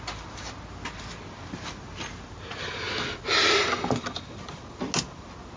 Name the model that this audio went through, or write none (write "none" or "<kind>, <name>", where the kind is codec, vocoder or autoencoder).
none